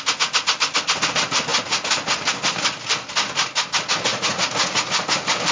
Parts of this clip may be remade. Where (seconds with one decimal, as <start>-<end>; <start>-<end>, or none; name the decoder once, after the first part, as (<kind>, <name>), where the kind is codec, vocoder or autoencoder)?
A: 4.1-4.9 (vocoder, Vocos)

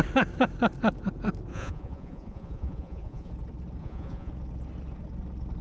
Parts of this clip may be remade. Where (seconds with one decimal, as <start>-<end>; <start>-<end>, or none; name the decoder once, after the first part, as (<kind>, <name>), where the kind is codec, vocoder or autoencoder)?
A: 1.5-3.3 (vocoder, Vocos); 3.8-4.3

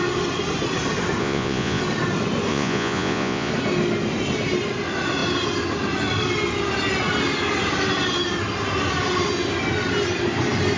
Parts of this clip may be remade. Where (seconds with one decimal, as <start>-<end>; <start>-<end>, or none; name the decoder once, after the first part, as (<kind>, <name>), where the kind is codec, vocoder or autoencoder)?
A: 1.2-1.8 (vocoder, Vocos); 2.5-3.5

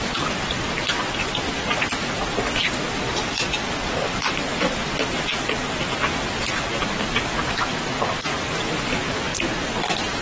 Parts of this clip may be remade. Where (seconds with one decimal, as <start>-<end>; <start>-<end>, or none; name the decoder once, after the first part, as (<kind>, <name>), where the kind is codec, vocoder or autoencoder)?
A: none

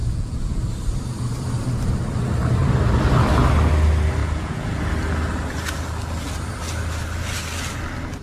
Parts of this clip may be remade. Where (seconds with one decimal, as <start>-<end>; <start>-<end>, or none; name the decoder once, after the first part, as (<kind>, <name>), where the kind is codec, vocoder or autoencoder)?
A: 0.0-0.6 (vocoder, Vocos); 4.2-4.8

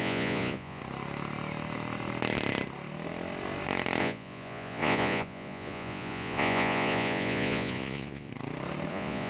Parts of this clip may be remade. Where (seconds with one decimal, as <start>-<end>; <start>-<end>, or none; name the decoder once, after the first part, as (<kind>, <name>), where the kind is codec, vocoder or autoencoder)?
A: 0.0-0.8 (vocoder, Vocos); 4.0-8.3; 8.9-9.3